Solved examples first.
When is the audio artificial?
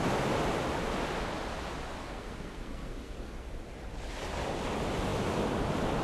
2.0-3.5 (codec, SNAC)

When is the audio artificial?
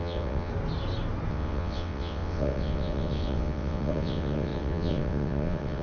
0.0-0.5 (vocoder, WaveNeXt); 1.3-5.8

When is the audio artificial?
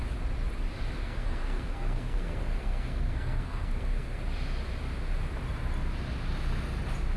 1.0-4.2 (codec, SNAC)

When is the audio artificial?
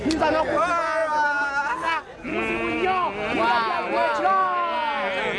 none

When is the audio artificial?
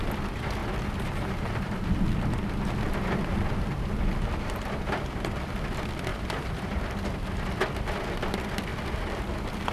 6.1-6.8 (vocoder, BigVGAN v2)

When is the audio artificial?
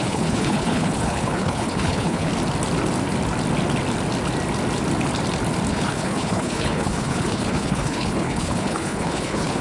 0.0-2.3 (codec, HILCodec); 5.7-9.6